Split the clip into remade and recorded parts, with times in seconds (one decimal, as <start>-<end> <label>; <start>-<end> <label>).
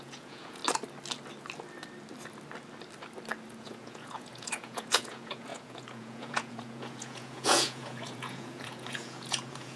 0.0-0.6 remade; 0.6-3.6 recorded; 3.6-9.8 remade